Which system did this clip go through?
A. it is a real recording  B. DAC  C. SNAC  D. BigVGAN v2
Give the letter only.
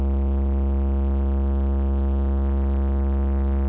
A